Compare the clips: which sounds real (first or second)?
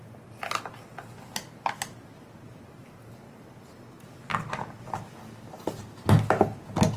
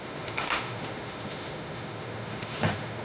first